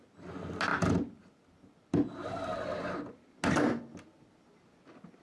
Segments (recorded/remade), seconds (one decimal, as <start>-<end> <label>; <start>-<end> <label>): 0.0-5.2 recorded